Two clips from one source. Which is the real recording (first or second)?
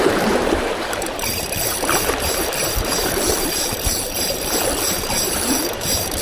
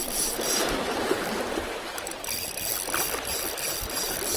second